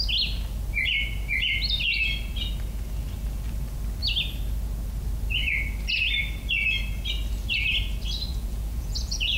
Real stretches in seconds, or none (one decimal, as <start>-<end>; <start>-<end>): 0.0-8.3